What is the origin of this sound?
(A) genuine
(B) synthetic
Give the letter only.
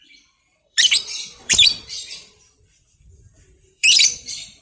B